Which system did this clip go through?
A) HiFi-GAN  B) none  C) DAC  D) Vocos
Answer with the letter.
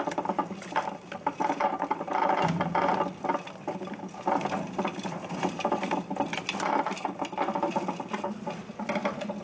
B